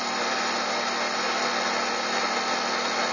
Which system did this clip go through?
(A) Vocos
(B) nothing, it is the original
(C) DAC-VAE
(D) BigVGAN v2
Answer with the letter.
B